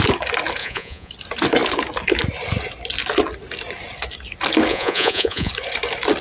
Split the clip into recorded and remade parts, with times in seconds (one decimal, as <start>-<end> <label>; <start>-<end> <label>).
0.0-0.6 recorded; 0.6-1.1 remade; 1.1-4.7 recorded; 4.7-5.5 remade; 5.5-6.2 recorded